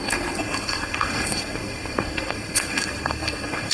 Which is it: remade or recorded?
remade